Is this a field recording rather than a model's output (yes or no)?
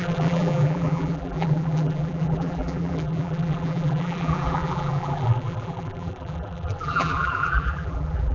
no